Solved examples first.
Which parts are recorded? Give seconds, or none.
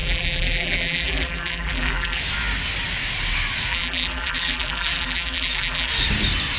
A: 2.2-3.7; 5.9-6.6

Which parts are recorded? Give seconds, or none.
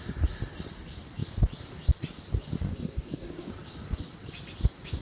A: 0.0-2.7; 3.5-5.0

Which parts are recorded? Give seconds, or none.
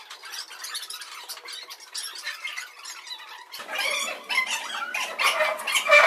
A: 3.1-6.1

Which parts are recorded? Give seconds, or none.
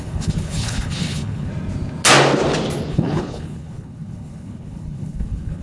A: 1.5-2.9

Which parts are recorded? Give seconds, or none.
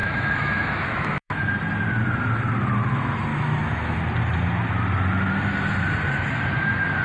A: 1.5-3.3; 4.0-7.0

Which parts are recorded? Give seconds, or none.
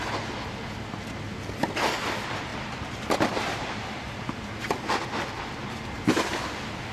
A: 0.0-6.9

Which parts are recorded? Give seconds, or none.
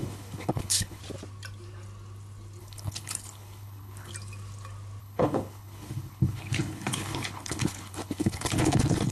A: 1.0-2.6; 4.1-5.0